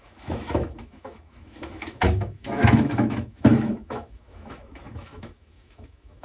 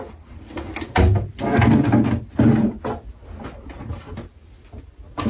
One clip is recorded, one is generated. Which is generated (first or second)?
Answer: first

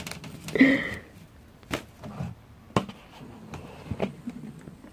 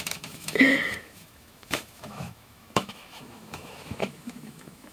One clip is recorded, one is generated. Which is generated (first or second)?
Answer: second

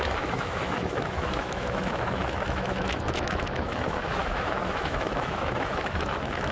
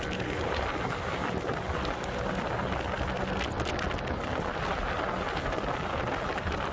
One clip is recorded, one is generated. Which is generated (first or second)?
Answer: first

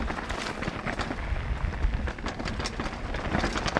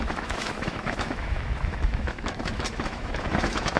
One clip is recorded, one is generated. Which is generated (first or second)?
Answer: second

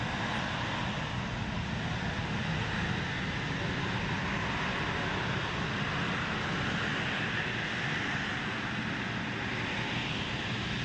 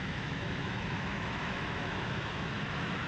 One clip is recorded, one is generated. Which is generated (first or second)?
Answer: second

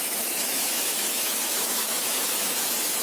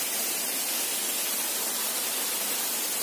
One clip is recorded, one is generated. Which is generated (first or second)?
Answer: first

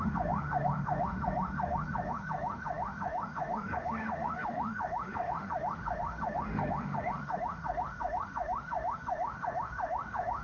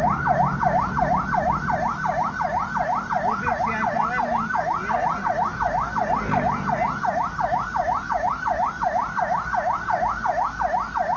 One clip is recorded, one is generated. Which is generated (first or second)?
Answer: first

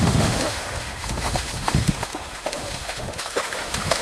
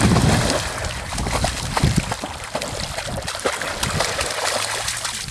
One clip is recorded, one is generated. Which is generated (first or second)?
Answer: first